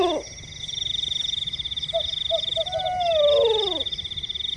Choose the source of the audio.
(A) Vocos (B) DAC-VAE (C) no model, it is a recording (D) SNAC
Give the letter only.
C